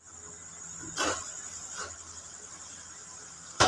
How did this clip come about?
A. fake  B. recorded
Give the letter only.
B